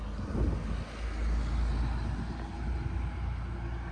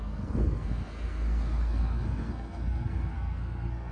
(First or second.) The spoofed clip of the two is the second